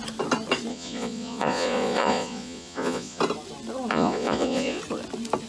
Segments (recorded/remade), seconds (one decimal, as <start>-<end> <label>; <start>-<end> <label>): 0.0-0.7 recorded; 0.7-3.2 remade; 3.2-3.9 recorded; 3.9-4.8 remade; 4.8-5.5 recorded